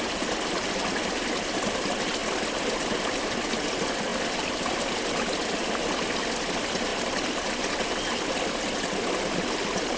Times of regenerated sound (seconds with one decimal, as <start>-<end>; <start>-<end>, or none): none